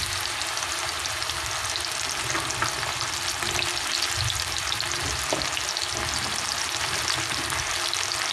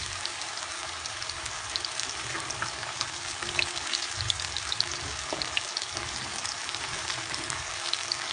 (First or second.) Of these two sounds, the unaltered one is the first